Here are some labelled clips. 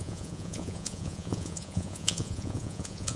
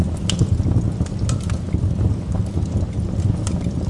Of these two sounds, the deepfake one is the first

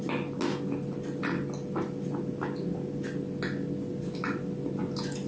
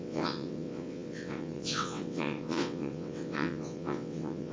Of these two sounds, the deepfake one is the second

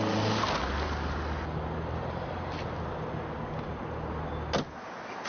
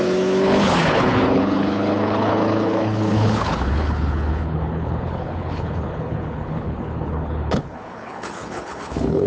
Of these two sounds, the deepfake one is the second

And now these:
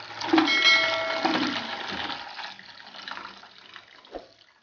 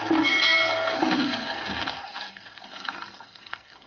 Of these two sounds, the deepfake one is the second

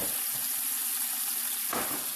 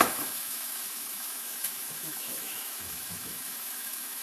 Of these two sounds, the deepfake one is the second